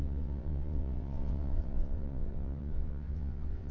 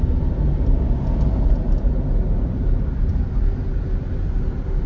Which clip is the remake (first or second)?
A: first